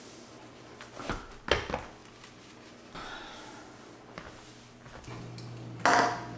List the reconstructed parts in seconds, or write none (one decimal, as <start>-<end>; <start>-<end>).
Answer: none